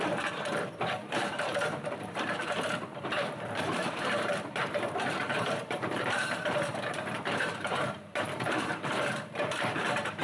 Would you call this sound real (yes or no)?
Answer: no